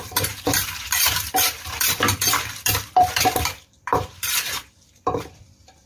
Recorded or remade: remade